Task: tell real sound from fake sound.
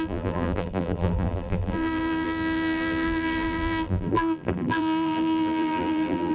fake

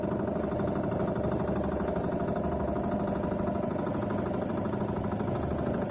real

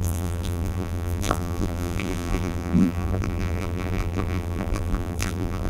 fake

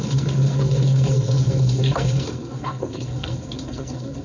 fake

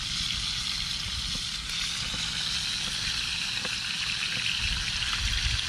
real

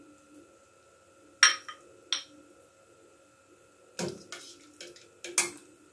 real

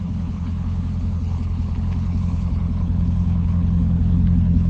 fake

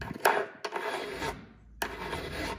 real